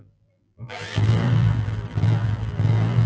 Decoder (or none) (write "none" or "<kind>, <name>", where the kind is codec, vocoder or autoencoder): vocoder, BigVGAN v2